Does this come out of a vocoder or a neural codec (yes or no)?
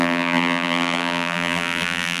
yes